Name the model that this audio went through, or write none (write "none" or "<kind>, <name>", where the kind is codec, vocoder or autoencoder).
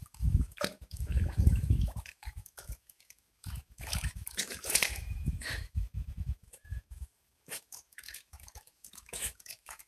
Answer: autoencoder, DAC-VAE